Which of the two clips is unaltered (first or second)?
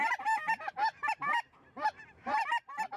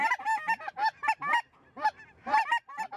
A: second